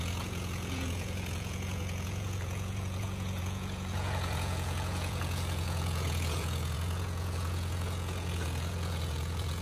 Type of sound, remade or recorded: remade